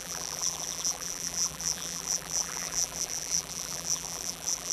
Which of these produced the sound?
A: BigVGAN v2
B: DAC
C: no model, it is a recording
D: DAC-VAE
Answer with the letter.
A